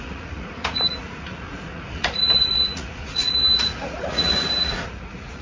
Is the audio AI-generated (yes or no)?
yes